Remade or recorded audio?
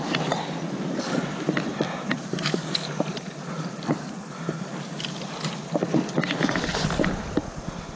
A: recorded